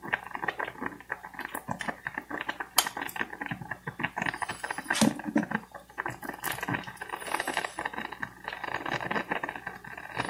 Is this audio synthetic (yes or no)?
no